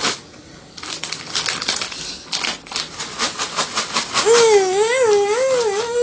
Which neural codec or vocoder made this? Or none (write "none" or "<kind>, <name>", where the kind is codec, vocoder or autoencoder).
none